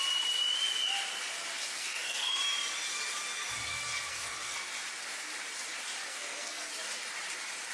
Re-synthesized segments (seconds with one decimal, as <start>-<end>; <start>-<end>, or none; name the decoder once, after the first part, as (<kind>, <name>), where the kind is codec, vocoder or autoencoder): 1.7-2.4 (codec, SNAC); 3.7-4.6; 6.1-6.7